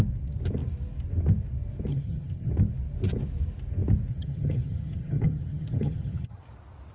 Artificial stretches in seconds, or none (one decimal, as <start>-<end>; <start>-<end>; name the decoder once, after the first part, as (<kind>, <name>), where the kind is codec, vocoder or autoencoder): 1.9-2.5 (vocoder, HiFi-GAN); 4.1-6.4